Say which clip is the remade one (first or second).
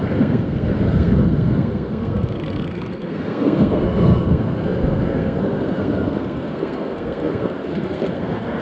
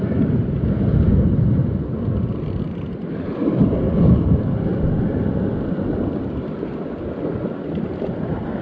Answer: first